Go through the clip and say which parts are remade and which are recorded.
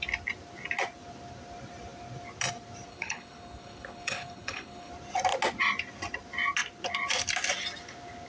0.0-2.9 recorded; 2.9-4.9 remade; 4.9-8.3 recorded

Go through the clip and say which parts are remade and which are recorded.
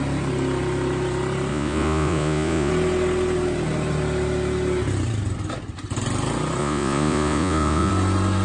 0.0-1.5 recorded; 1.5-2.7 remade; 2.7-6.6 recorded; 6.6-7.9 remade; 7.9-8.4 recorded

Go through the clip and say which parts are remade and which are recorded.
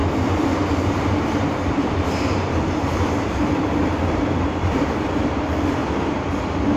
0.0-1.0 recorded; 1.0-5.8 remade; 5.8-6.8 recorded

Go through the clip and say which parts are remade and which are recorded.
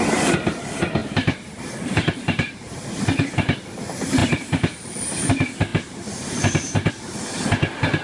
0.0-1.0 recorded; 1.0-3.3 remade; 3.3-4.2 recorded; 4.2-5.1 remade; 5.1-5.7 recorded; 5.7-6.9 remade; 6.9-8.0 recorded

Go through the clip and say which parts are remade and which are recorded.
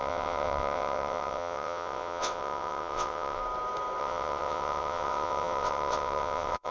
0.0-3.4 remade; 3.4-4.0 recorded; 4.0-6.7 remade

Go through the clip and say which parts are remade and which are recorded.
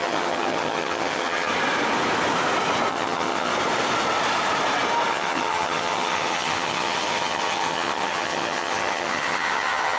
0.0-1.5 remade; 1.5-2.9 recorded; 2.9-3.5 remade; 3.5-5.1 recorded; 5.1-10.0 remade